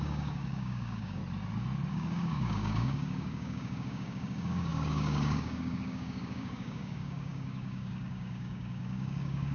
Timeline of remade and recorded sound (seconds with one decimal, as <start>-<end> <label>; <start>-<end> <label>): 0.0-1.2 remade; 1.2-1.9 recorded; 1.9-9.5 remade